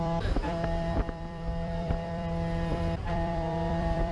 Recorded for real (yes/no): no